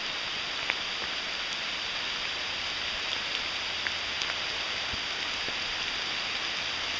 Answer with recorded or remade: recorded